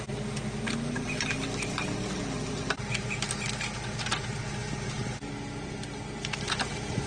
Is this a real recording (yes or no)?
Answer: yes